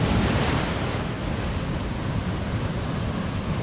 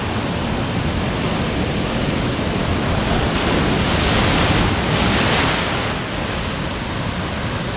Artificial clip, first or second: first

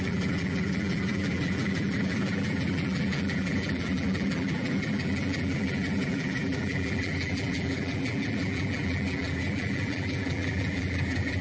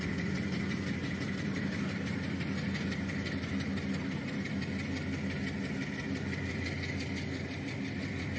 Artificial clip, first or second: first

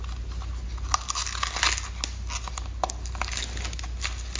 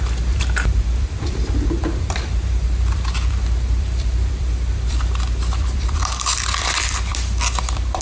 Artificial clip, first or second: second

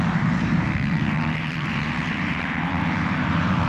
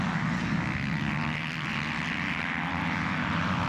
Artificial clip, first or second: first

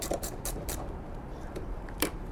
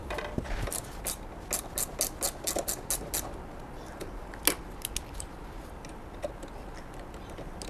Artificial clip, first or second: first